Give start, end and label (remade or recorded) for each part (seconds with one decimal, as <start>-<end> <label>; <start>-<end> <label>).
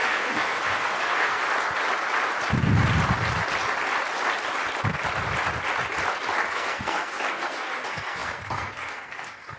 0.0-1.4 remade; 1.4-6.5 recorded; 6.5-9.6 remade